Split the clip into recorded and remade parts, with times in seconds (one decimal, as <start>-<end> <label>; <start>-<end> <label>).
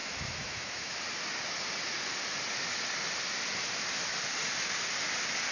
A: 0.0-1.0 remade; 1.0-5.5 recorded